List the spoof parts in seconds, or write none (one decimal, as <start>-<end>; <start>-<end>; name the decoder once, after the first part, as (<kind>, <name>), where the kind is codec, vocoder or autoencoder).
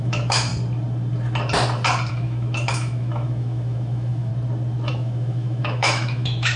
0.0-0.5 (autoencoder, DAC-VAE); 2.1-4.3; 4.9-6.6